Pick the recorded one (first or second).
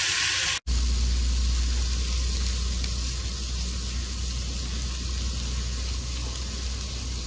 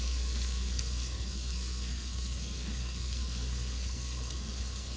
first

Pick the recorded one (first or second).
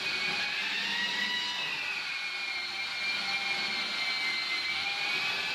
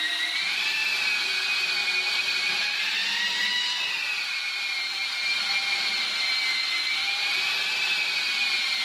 first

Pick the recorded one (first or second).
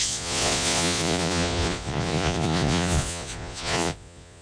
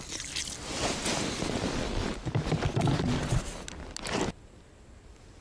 second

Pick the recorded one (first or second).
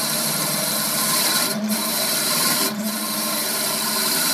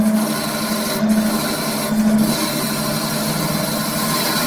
second